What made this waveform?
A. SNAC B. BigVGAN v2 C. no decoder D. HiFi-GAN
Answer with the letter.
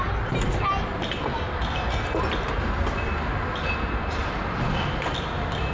C